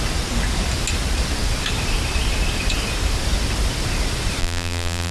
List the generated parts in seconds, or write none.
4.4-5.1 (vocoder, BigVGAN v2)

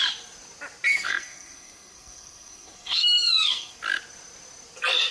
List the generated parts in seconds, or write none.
0.9-3.8 (codec, SNAC)

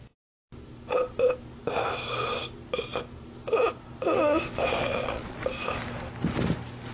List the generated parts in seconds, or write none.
4.9-5.5 (vocoder, Vocos)

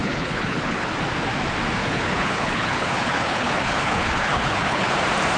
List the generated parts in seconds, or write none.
0.0-0.9 (codec, HILCodec); 1.8-5.0

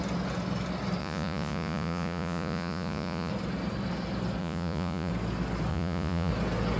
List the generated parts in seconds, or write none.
1.0-3.3 (vocoder, Vocos); 4.4-5.1; 5.7-6.3